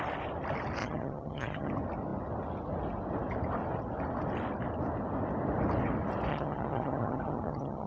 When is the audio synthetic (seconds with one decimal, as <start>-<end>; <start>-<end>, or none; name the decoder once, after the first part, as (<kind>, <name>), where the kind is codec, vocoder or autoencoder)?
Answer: 0.8-1.7 (vocoder, HiFi-GAN); 6.3-7.9